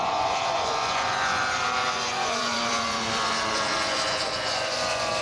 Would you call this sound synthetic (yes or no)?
yes